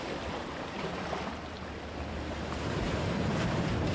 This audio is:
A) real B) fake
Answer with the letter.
A